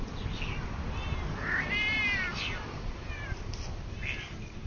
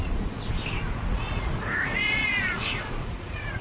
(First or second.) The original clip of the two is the first